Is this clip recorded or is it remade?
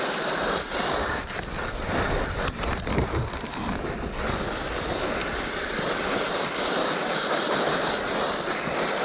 remade